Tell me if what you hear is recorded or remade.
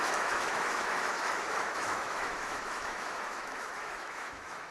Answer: remade